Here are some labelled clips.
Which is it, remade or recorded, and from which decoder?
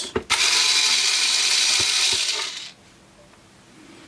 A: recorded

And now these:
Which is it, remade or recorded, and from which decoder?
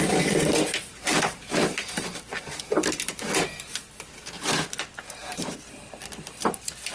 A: recorded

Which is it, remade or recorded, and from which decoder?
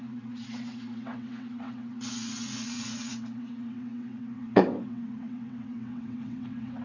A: remade, vocoder, WaveNeXt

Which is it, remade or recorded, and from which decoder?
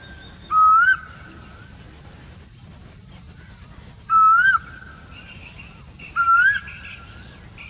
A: recorded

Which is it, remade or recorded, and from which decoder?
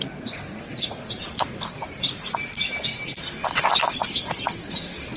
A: recorded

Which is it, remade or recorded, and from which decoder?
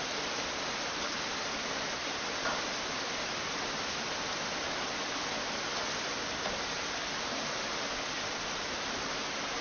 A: recorded